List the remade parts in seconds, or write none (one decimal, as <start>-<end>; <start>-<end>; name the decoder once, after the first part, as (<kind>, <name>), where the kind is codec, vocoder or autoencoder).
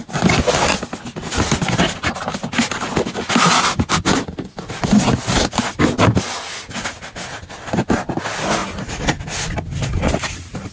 none